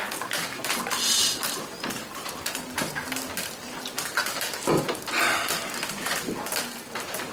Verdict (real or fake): real